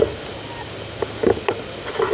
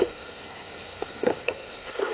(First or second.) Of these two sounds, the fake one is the second